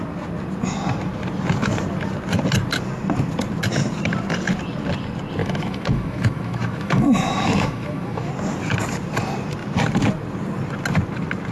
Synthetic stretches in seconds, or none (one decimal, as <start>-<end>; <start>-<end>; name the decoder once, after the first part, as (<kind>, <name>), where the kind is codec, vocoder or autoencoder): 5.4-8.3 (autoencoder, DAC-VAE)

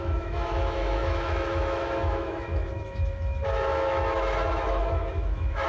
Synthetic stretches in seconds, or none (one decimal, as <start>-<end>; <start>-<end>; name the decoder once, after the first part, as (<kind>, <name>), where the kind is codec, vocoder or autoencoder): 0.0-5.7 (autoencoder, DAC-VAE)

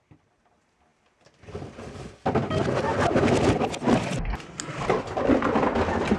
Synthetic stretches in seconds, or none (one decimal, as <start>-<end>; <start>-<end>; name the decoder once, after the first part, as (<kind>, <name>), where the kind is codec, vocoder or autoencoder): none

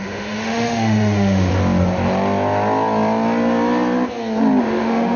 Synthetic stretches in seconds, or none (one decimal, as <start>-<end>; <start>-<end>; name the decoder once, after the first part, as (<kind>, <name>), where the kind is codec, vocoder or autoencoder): 0.0-1.5 (autoencoder, DAC-VAE); 4.6-5.2